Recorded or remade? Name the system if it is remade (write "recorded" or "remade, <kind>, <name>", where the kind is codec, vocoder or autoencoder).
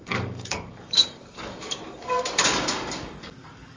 remade, codec, DAC